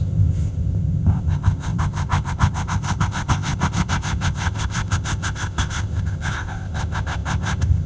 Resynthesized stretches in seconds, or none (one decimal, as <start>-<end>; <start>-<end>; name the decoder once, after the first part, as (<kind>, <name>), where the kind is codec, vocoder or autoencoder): 0.0-7.9 (codec, ZipCodec)